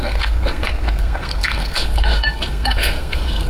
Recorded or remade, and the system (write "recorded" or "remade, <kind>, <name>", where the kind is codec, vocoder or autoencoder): remade, codec, SNAC